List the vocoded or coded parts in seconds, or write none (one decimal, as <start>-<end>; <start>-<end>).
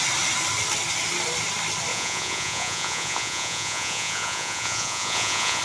1.9-5.6